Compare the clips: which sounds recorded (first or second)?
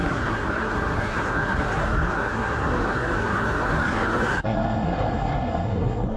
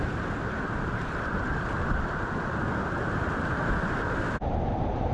second